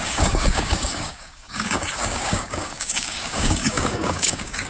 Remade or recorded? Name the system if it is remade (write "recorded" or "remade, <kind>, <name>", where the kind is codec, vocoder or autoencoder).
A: remade, codec, DAC